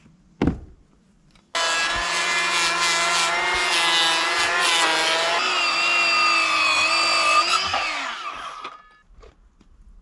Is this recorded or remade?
recorded